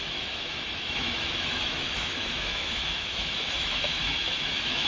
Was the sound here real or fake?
fake